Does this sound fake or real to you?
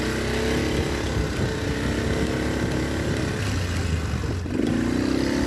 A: real